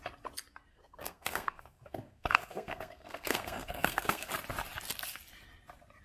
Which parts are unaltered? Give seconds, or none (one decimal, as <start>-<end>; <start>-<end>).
0.0-0.7; 4.3-6.0